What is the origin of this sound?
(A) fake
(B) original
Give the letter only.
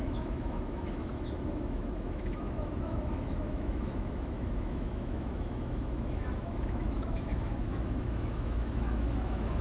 A